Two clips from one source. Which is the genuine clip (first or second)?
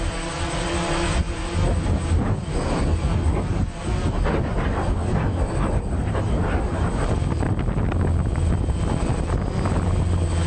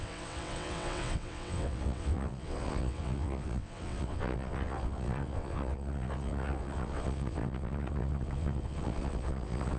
first